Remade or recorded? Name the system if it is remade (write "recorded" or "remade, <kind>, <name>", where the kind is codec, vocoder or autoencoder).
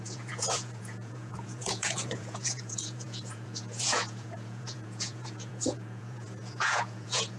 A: remade, vocoder, Vocos